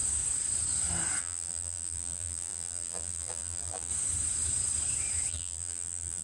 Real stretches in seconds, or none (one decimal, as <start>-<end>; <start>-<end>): 0.0-1.2; 3.9-5.3